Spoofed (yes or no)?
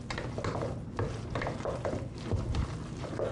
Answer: no